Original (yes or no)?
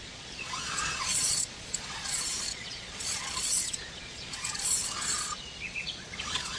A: no